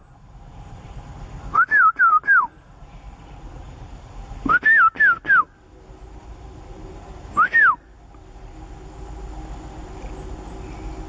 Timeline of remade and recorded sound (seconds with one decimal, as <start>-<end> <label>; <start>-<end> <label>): 0.0-4.5 remade; 4.5-6.2 recorded; 6.2-7.6 remade; 7.6-11.1 recorded